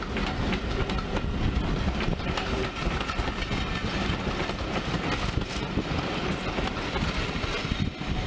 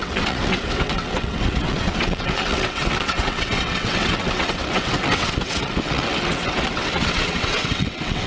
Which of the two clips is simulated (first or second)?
second